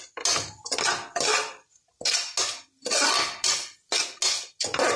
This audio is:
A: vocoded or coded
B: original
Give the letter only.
B